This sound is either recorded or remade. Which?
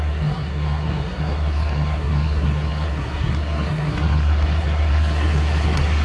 remade